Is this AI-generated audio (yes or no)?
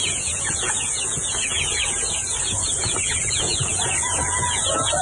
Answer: yes